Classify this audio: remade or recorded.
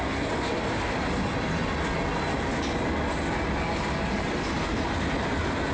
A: recorded